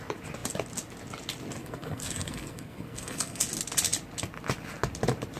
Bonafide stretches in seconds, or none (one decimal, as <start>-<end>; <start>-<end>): 0.0-1.6; 3.4-5.4